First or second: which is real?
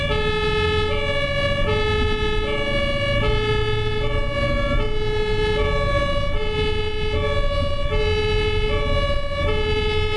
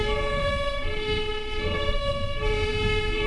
first